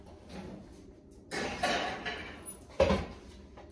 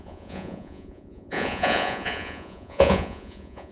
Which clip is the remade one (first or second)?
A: second